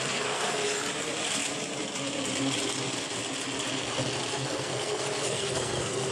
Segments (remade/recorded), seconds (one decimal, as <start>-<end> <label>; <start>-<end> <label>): 0.0-0.6 remade; 0.6-4.3 recorded; 4.3-6.1 remade